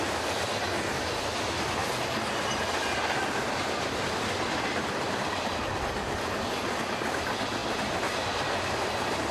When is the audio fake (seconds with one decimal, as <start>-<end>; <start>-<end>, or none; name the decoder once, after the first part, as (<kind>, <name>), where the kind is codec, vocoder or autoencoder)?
1.8-5.3 (vocoder, BigVGAN v2)